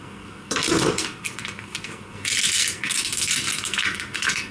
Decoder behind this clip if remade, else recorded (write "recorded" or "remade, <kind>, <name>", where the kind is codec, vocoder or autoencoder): remade, codec, SNAC